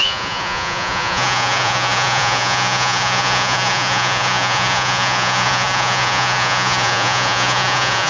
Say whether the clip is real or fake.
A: fake